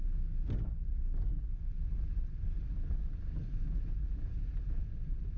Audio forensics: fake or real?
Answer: real